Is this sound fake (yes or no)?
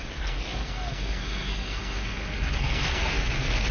yes